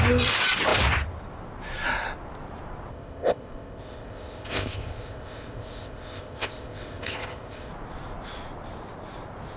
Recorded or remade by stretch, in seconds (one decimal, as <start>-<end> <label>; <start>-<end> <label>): 0.0-2.9 recorded; 2.9-7.7 remade; 7.7-9.6 recorded